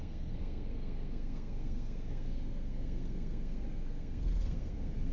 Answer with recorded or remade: remade